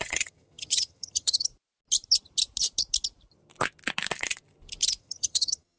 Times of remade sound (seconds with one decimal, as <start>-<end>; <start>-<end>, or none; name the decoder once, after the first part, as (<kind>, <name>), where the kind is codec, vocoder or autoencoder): 0.0-1.5 (vocoder, HiFi-GAN); 5.0-5.8